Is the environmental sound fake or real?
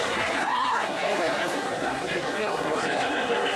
fake